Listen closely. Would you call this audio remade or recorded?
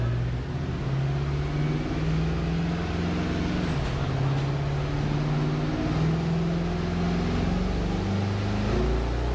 recorded